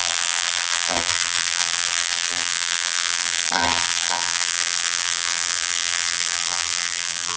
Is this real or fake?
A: fake